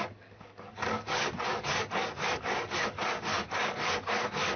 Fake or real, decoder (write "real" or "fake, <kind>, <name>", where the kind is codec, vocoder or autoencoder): fake, codec, DAC